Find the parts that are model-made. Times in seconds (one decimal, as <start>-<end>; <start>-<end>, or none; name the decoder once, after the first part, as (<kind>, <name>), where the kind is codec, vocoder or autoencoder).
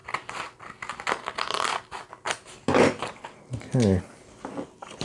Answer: none